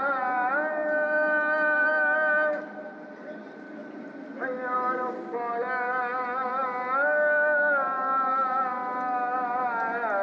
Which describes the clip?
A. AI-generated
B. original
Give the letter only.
B